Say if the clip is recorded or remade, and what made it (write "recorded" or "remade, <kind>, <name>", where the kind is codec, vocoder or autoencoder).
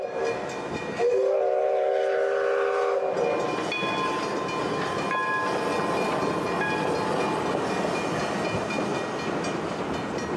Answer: recorded